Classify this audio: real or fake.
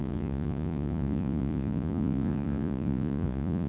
fake